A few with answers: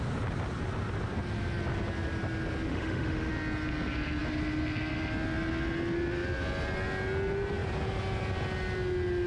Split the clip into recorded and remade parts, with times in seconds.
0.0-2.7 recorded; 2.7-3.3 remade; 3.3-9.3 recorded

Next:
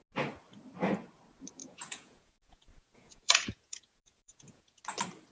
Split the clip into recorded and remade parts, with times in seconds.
0.0-1.6 recorded; 1.6-4.8 remade; 4.8-5.3 recorded

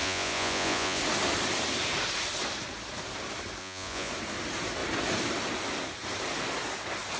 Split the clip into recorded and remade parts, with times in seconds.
0.0-1.0 remade; 1.0-3.6 recorded; 3.6-4.1 remade; 4.1-7.2 recorded